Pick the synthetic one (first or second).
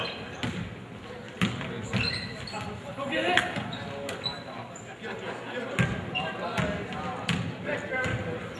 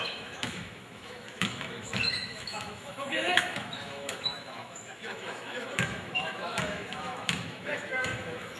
second